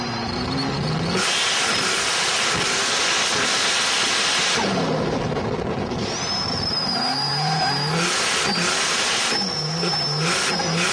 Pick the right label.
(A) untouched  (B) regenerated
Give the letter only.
A